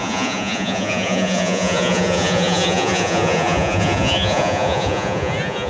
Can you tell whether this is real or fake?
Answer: fake